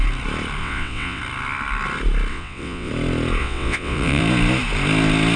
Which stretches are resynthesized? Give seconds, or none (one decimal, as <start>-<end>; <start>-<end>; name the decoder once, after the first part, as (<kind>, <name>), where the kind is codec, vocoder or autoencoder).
0.6-1.2 (vocoder, WaveNeXt); 2.3-2.9; 3.4-4.2

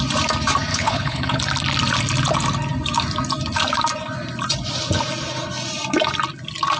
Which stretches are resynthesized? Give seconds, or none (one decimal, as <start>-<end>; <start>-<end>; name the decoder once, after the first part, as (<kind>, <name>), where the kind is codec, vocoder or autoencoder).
0.7-1.4 (codec, HILCodec)

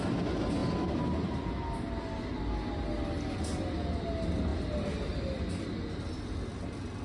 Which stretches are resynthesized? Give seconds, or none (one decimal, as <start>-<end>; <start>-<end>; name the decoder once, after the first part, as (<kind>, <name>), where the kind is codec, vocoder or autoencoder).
none